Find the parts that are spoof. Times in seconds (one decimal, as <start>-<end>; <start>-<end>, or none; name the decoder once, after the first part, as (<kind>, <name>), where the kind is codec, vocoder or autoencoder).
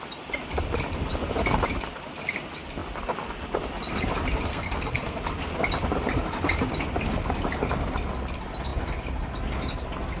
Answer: 4.5-5.2 (codec, SNAC)